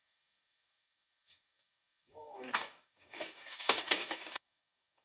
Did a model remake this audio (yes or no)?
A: yes